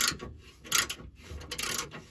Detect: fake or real real